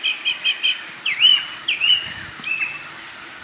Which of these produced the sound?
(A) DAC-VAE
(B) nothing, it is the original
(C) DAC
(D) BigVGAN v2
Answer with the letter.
B